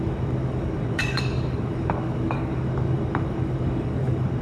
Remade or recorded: remade